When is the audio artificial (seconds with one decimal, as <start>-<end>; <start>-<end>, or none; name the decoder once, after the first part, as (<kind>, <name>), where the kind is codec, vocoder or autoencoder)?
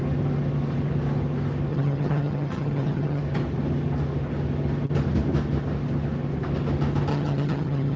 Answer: 1.7-3.2 (vocoder, HiFi-GAN); 7.1-8.0